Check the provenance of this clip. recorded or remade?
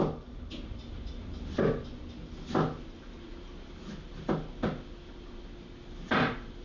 recorded